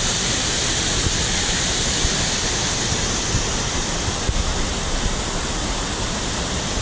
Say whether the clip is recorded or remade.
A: recorded